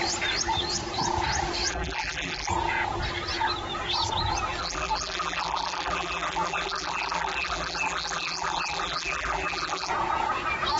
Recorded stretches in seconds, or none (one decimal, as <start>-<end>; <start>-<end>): 0.0-1.7; 2.5-4.6; 9.9-10.8